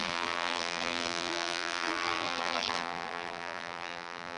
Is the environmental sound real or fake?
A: fake